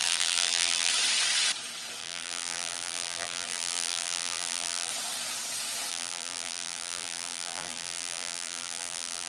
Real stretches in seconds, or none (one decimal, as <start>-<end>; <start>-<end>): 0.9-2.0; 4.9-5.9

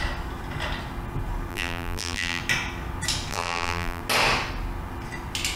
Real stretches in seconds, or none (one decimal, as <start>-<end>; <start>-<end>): 0.0-1.5; 2.4-3.3; 4.0-5.6

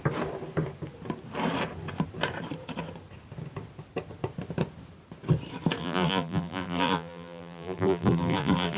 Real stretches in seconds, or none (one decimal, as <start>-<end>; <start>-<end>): 0.0-5.8

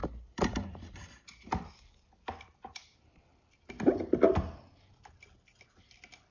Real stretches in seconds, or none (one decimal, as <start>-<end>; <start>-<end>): 1.0-6.3

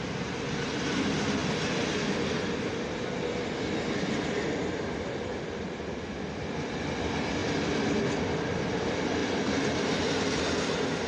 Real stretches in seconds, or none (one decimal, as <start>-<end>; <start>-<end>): 0.0-11.1